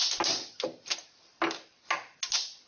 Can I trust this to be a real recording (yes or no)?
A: yes